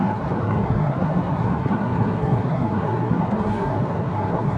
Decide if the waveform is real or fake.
fake